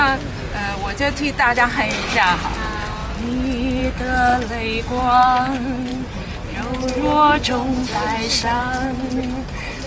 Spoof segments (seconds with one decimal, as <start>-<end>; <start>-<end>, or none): none